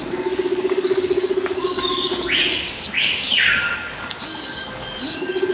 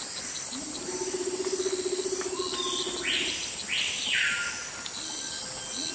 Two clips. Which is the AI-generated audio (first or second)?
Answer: first